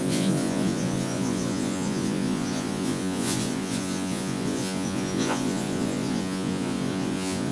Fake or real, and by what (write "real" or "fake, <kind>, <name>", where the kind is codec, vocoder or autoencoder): fake, vocoder, Vocos